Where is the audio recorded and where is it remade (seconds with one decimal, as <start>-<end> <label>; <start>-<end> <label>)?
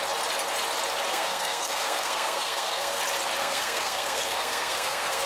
0.0-1.1 recorded; 1.1-3.0 remade; 3.0-3.4 recorded; 3.4-5.3 remade